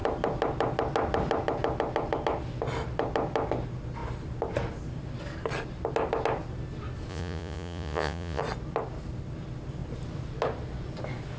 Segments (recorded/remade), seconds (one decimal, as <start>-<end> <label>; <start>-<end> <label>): 0.0-7.1 recorded; 7.1-8.4 remade; 8.4-11.4 recorded